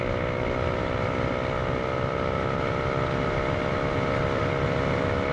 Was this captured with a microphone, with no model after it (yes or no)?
yes